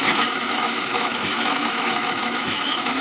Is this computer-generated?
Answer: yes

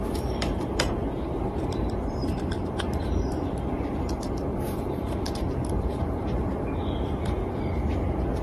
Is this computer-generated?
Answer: yes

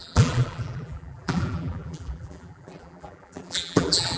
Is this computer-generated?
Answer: yes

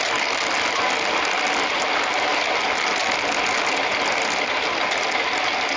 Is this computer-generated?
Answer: no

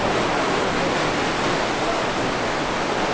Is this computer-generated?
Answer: no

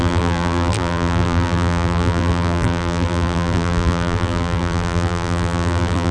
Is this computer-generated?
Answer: yes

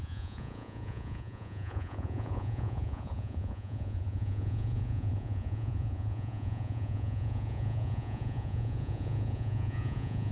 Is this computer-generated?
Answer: yes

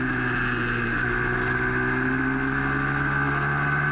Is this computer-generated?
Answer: no